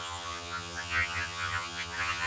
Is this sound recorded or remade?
remade